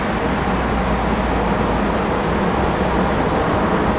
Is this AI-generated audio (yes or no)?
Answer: no